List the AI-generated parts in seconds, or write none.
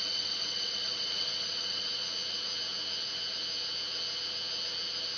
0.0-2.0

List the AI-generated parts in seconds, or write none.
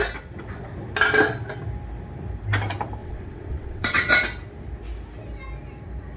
3.0-4.1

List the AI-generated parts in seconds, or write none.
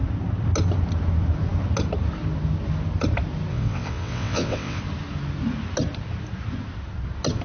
3.5-4.8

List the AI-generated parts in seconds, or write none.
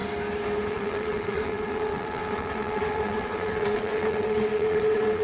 0.7-5.2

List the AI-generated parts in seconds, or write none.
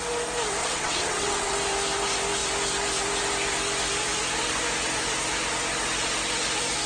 0.6-1.5